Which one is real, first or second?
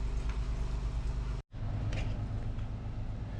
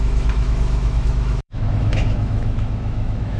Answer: first